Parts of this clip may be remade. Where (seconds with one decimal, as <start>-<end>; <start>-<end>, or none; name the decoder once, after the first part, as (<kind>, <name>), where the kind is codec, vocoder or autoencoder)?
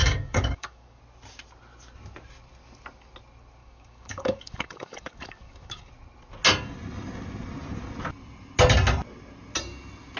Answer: 0.0-1.0 (codec, DAC); 3.6-5.9